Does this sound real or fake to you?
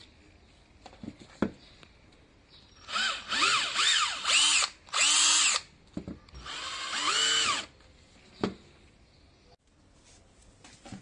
real